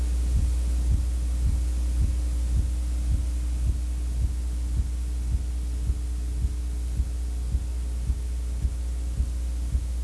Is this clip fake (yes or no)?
no